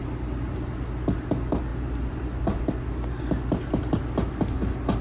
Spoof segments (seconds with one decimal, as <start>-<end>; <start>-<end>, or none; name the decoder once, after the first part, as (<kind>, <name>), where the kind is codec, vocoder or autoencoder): none